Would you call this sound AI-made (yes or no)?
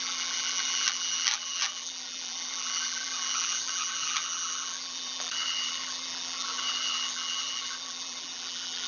yes